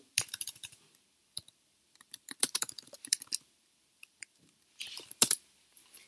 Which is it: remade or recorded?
remade